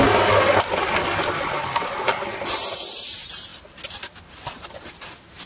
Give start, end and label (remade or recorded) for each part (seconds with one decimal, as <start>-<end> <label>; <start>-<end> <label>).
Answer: 0.0-5.5 recorded